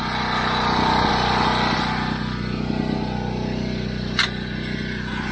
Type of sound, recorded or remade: recorded